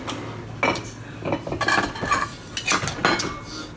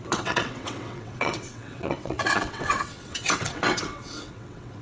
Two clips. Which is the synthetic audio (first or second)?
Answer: second